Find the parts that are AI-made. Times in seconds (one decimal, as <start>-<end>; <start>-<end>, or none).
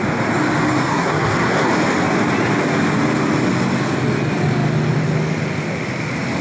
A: 0.9-1.7